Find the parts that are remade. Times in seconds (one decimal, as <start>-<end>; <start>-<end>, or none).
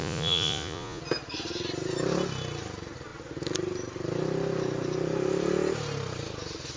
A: 0.0-1.0